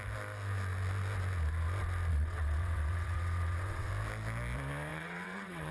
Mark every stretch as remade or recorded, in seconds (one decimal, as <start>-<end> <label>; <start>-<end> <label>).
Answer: 0.0-2.1 recorded; 2.1-3.9 remade; 3.9-4.9 recorded; 4.9-5.7 remade